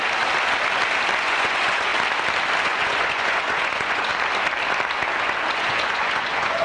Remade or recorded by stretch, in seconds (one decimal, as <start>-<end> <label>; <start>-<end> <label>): 0.0-1.2 recorded; 1.2-1.9 remade; 1.9-2.6 recorded; 2.6-4.1 remade; 4.1-5.2 recorded; 5.2-6.6 remade